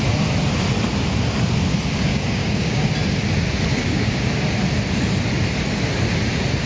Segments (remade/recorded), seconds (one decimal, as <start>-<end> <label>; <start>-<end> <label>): 0.0-2.1 recorded; 2.1-2.9 remade; 2.9-3.7 recorded; 3.7-4.3 remade; 4.3-6.7 recorded